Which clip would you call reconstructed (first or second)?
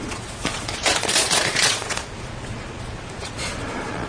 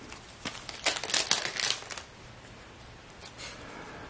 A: first